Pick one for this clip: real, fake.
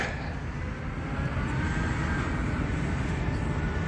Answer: real